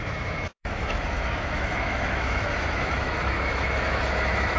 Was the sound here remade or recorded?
remade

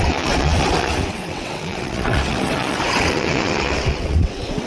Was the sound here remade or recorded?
remade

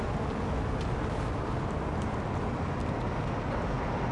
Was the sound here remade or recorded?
recorded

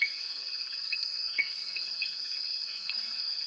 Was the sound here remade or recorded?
remade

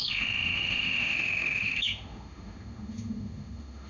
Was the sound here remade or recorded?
remade